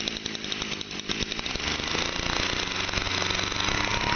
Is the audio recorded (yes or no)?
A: yes